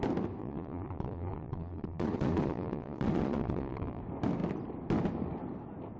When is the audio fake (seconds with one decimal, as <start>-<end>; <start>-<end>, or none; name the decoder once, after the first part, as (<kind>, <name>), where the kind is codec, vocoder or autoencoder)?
0.4-4.0 (vocoder, Vocos)